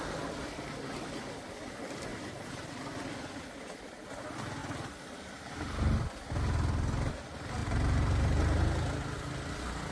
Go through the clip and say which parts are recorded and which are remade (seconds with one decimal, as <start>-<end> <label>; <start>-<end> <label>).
0.0-2.1 recorded; 2.1-2.7 remade; 2.7-7.6 recorded; 7.6-8.6 remade; 8.6-9.9 recorded